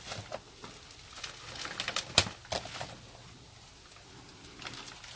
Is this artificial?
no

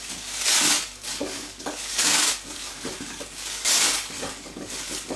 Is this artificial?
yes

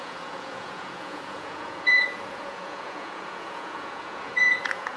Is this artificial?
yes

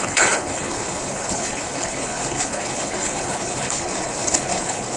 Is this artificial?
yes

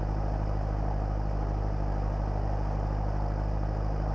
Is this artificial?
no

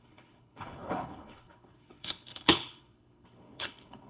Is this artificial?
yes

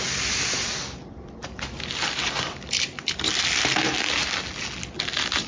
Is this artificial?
no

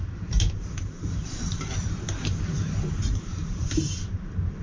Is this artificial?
yes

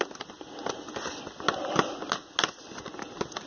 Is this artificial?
no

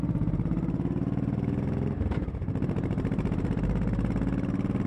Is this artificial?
yes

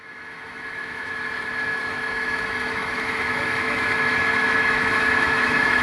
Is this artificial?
yes